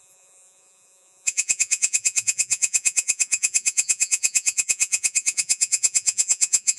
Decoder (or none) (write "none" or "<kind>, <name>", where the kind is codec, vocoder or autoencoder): vocoder, Vocos